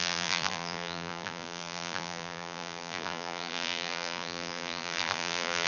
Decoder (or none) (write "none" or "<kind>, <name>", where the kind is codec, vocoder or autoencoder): vocoder, BigVGAN v2